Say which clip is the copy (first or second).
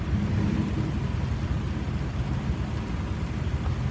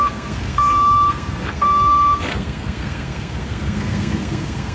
second